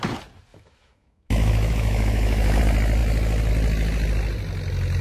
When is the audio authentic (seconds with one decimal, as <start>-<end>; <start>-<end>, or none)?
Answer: 0.0-0.5; 2.6-5.0